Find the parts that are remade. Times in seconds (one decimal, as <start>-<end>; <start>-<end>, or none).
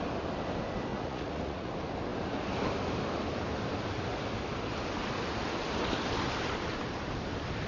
0.9-1.7